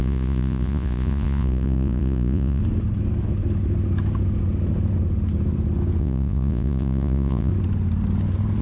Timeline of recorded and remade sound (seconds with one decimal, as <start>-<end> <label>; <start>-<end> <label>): 0.0-2.6 remade; 2.6-6.0 recorded; 6.0-7.5 remade; 7.5-8.6 recorded